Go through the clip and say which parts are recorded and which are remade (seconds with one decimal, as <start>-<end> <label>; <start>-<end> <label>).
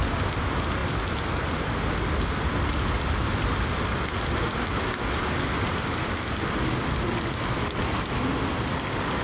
0.0-9.2 recorded